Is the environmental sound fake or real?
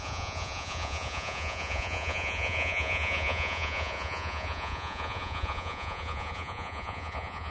fake